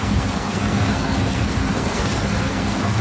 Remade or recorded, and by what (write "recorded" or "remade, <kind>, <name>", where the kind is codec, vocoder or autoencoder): remade, codec, SNAC